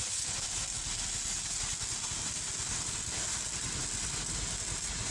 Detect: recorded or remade recorded